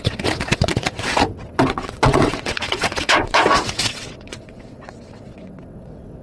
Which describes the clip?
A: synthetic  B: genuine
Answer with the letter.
A